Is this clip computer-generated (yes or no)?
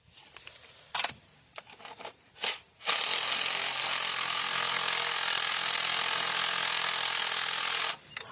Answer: no